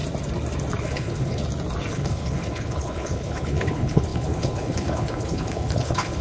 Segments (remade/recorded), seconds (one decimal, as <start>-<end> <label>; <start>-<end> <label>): 0.0-0.8 recorded; 0.8-1.4 remade; 1.4-1.9 recorded; 1.9-6.2 remade